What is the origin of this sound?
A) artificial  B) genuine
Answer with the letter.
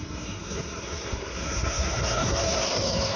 A